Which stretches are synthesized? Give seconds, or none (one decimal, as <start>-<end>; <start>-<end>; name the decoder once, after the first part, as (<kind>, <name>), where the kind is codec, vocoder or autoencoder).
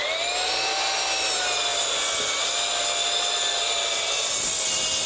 none